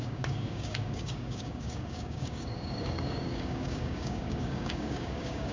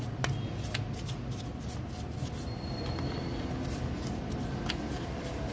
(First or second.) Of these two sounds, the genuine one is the second